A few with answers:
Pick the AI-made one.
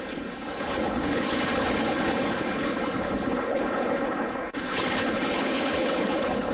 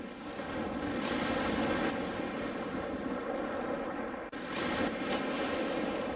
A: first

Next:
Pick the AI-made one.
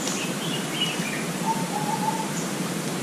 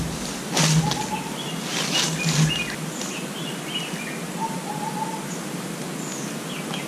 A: first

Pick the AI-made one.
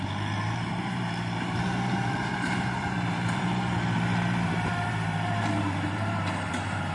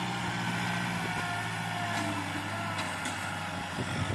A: first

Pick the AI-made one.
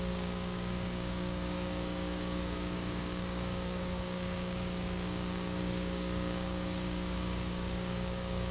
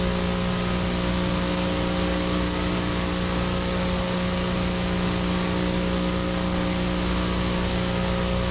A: first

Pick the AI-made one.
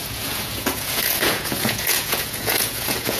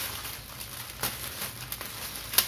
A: first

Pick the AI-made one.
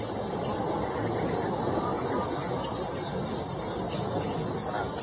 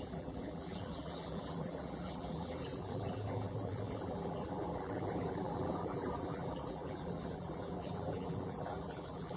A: second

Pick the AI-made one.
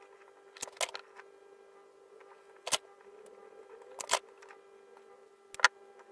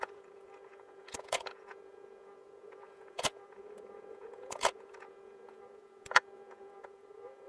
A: second